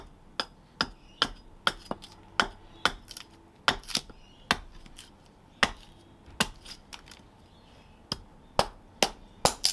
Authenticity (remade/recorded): recorded